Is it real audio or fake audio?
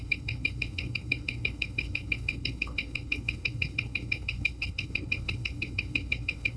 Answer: fake